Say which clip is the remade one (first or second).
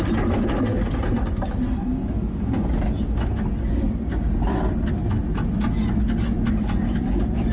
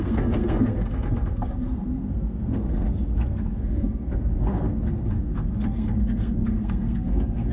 second